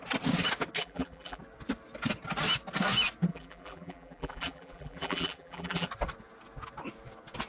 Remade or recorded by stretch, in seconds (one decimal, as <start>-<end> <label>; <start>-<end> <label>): 0.0-0.8 recorded; 0.8-1.4 remade; 1.4-3.3 recorded; 3.3-5.9 remade; 5.9-7.5 recorded